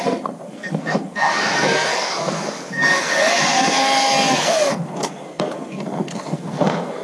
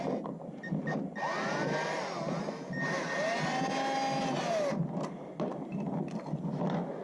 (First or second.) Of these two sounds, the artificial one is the first